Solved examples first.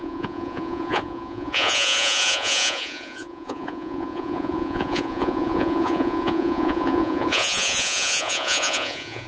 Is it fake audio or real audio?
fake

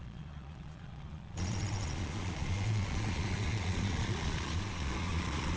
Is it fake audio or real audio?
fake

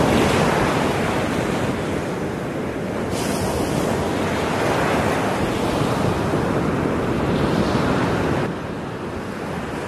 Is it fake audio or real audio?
real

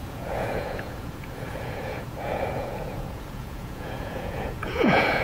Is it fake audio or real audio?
fake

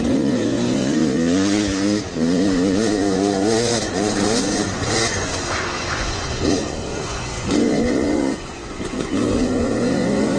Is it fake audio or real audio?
fake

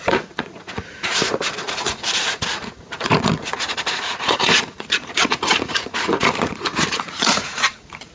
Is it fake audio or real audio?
fake